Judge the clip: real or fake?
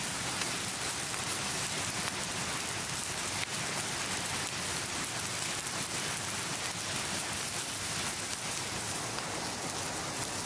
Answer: real